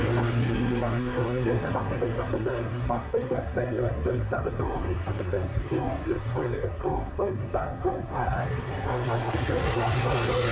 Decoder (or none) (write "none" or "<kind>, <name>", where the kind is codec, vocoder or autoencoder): codec, SNAC